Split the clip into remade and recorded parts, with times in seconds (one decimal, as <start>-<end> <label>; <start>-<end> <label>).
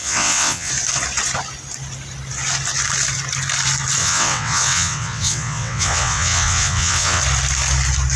0.0-0.7 remade; 0.7-4.0 recorded; 4.0-7.2 remade; 7.2-8.2 recorded